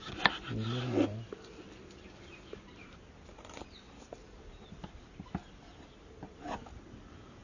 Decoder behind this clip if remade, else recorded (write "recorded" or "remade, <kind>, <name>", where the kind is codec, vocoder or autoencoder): recorded